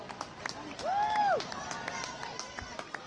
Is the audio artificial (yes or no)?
no